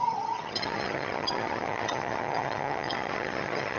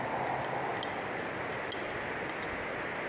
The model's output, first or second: first